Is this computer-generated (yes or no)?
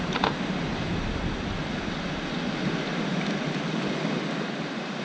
no